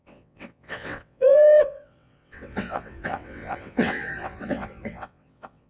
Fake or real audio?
fake